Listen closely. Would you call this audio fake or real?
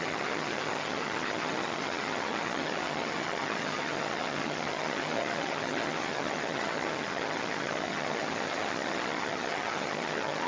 fake